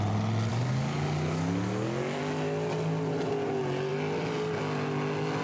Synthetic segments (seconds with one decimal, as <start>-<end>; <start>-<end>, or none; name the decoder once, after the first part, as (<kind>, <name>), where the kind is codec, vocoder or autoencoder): 0.5-2.2 (codec, DAC)